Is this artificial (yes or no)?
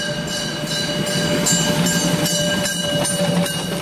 no